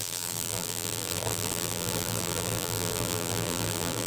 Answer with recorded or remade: remade